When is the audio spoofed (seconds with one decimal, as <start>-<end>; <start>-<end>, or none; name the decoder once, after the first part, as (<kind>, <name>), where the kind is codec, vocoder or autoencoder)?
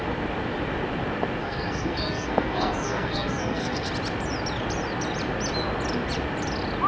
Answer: 1.4-3.9 (codec, SNAC)